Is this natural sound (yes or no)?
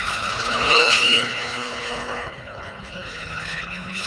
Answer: no